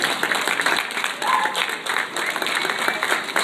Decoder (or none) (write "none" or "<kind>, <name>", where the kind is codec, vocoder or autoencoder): none